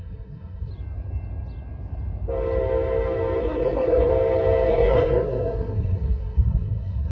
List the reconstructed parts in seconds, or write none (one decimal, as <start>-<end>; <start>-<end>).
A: 0.0-0.7; 3.4-4.1; 4.7-7.1